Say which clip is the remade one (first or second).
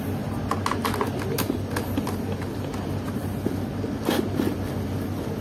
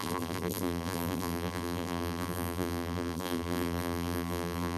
second